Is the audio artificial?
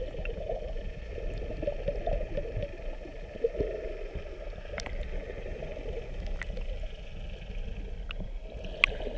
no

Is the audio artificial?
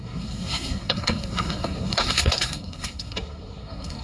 yes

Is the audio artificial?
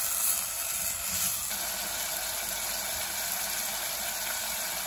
no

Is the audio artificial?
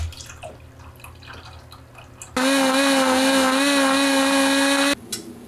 no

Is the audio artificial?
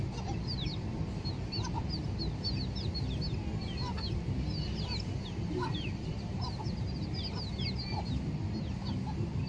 no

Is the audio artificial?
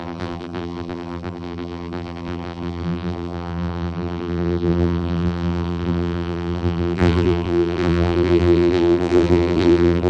yes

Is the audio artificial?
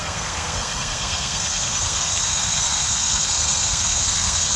yes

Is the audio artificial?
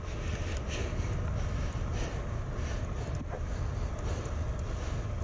no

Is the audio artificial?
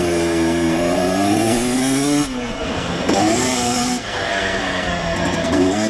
yes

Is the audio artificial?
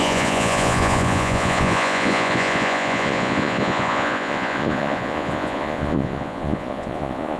yes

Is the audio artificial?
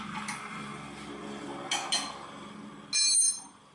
no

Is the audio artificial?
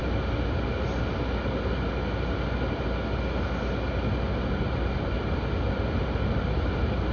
no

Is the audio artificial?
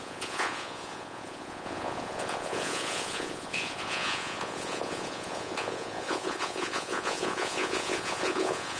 yes